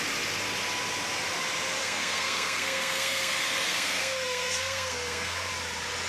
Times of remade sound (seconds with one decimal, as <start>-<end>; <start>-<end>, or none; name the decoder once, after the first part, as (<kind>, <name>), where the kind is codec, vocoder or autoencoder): 1.8-5.5 (codec, SNAC)